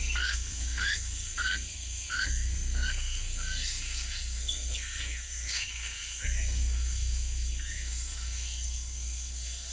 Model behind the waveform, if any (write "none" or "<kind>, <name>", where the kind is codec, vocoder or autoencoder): codec, SNAC